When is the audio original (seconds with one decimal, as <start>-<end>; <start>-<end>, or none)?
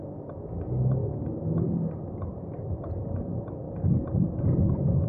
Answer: 0.0-5.1